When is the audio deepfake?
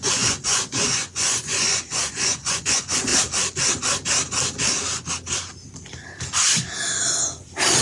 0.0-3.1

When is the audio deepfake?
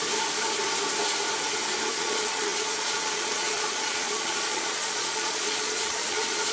1.9-6.5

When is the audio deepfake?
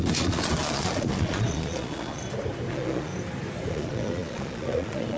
0.0-2.2; 2.7-3.1; 3.7-5.2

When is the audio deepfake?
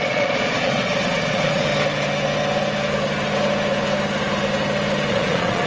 0.0-1.7; 5.1-5.7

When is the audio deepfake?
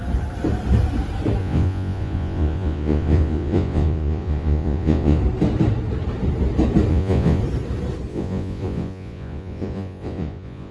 1.4-5.2; 6.9-7.4; 8.1-10.7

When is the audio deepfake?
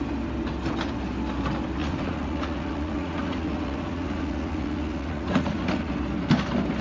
1.8-5.9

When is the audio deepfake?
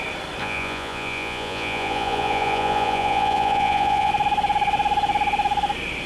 0.4-4.1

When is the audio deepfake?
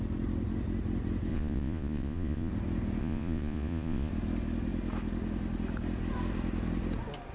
1.3-2.5; 3.0-4.1